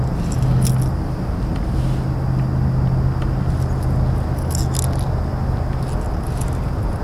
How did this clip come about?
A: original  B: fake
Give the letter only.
A